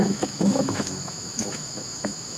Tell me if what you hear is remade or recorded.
remade